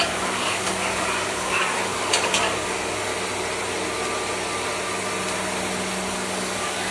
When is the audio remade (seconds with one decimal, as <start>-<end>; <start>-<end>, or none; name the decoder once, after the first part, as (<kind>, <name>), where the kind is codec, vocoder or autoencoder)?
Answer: 0.0-3.1 (codec, DAC); 6.1-6.9